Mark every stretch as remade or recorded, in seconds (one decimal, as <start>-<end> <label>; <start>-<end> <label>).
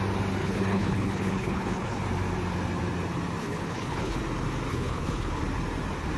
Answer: 0.0-0.4 recorded; 0.4-2.0 remade; 2.0-3.4 recorded; 3.4-4.2 remade; 4.2-4.7 recorded; 4.7-5.4 remade; 5.4-6.2 recorded